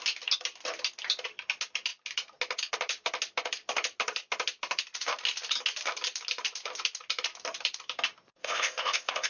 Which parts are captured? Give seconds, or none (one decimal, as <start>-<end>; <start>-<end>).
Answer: 0.0-8.4